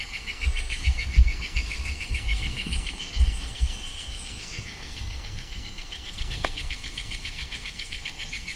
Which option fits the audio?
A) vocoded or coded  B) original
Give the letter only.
A